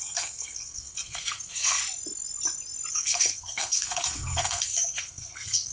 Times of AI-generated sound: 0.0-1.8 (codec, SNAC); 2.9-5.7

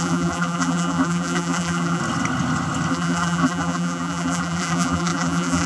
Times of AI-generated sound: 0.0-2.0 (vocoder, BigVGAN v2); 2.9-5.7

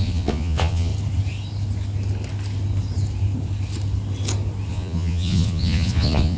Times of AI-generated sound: 0.0-0.9 (vocoder, Vocos); 4.7-6.4

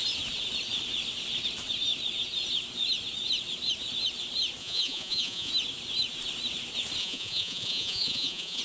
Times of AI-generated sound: 4.6-5.5 (vocoder, Vocos); 7.0-8.6

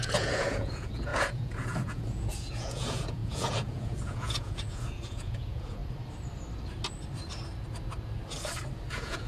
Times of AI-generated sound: 0.0-5.8 (vocoder, Vocos); 8.9-9.3

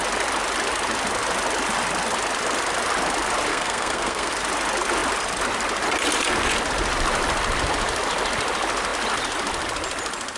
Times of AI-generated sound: 3.5-4.3 (codec, SNAC)